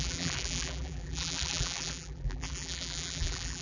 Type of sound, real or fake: fake